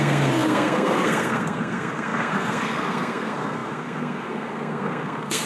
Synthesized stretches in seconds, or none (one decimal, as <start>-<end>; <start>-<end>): 0.0-5.5